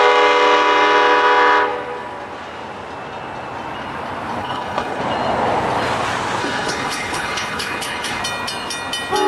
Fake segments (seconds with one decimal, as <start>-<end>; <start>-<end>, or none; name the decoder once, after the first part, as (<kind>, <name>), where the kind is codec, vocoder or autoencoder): 4.4-5.0 (codec, HILCodec); 6.4-8.2